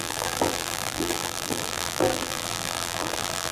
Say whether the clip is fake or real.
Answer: fake